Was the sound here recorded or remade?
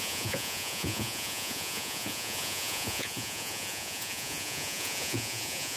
remade